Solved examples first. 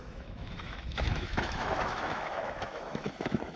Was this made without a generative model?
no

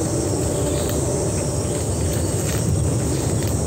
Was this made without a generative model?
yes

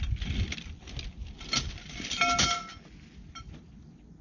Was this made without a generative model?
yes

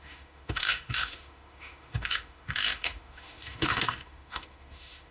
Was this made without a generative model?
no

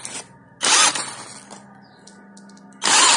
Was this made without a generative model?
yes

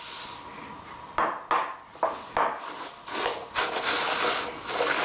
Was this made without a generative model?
yes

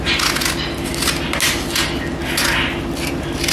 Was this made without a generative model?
yes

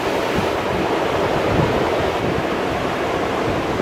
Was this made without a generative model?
yes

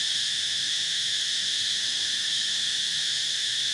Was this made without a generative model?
no